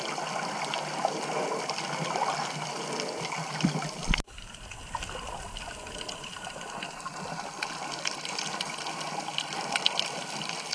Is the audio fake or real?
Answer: real